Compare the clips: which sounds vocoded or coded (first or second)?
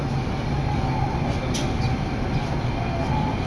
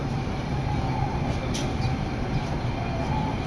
second